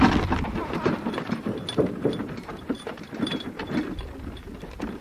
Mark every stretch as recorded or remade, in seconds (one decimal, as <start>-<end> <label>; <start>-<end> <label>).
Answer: 0.0-0.6 recorded; 0.6-3.6 remade; 3.6-5.0 recorded